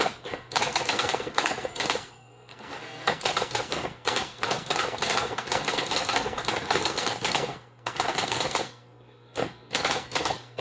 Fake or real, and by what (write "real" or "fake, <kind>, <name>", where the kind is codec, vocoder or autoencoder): fake, codec, SNAC